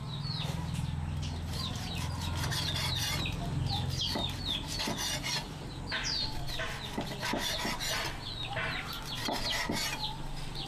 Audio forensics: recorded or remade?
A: recorded